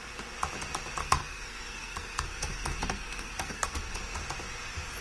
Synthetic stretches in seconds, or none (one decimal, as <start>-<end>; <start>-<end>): 1.0-4.0